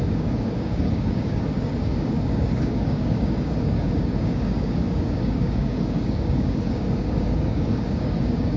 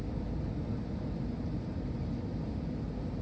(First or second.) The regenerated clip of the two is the first